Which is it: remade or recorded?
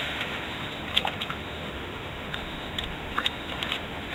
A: remade